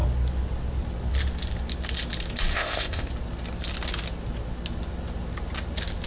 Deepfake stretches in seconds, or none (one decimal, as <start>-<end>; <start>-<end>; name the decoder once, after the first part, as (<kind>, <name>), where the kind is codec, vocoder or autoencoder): 2.5-3.1 (codec, ZipCodec)

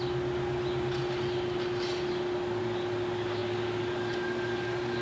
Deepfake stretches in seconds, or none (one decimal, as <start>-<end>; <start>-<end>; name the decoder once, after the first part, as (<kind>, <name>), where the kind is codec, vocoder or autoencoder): none

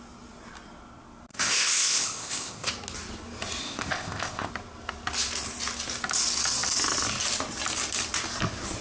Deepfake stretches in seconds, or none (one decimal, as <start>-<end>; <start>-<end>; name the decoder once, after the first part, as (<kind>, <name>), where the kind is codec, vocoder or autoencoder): 1.3-2.7 (codec, ZipCodec); 3.6-4.5

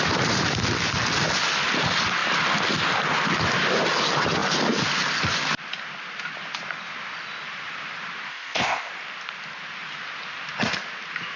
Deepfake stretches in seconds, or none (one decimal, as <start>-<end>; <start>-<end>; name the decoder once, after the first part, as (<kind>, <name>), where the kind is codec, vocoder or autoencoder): 8.3-8.9 (codec, ZipCodec)

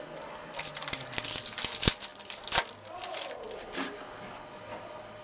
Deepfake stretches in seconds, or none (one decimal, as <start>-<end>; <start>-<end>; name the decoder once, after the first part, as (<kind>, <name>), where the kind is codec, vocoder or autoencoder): none

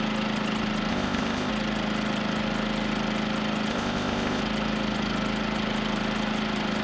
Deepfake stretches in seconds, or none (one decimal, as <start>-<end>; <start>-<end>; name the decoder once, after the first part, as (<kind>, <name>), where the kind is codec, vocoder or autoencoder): 0.9-1.5 (codec, ZipCodec); 3.7-4.4